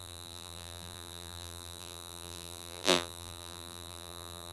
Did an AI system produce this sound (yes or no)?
yes